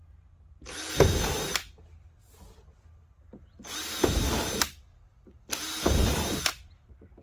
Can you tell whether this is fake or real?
real